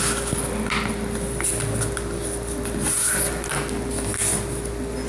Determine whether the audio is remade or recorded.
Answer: recorded